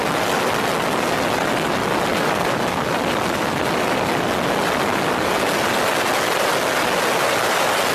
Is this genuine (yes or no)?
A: yes